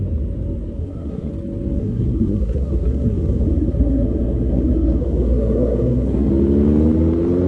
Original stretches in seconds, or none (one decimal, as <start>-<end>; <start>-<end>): 0.0-0.8; 1.3-1.8; 6.3-7.5